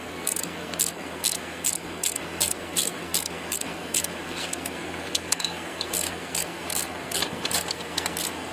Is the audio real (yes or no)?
no